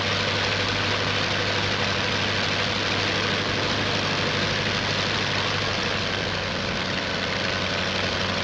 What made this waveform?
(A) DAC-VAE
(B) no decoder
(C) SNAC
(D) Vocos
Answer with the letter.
B